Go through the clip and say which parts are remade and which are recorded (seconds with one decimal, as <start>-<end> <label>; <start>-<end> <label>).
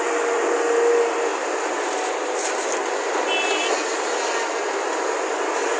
0.0-5.8 recorded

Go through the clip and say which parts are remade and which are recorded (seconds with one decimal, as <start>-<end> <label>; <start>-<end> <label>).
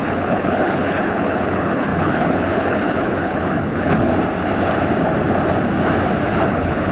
0.0-4.1 remade; 4.1-6.3 recorded; 6.3-6.9 remade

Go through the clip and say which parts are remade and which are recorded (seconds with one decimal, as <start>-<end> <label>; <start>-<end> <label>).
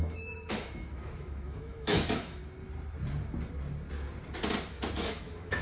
0.0-2.4 remade; 2.4-4.7 recorded; 4.7-5.6 remade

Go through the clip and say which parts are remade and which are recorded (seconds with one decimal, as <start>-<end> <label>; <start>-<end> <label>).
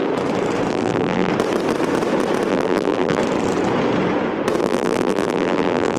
0.0-0.7 recorded; 0.7-1.3 remade; 1.3-2.5 recorded; 2.5-3.2 remade; 3.2-4.6 recorded; 4.6-6.0 remade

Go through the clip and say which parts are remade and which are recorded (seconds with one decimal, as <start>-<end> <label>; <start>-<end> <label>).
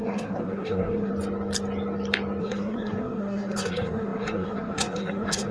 0.0-1.1 remade; 1.1-2.4 recorded; 2.4-5.5 remade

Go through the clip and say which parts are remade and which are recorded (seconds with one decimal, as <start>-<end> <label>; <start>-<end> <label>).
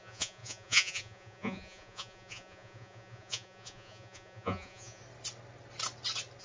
0.0-5.0 remade; 5.0-6.4 recorded